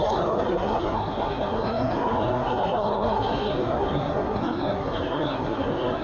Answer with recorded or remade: remade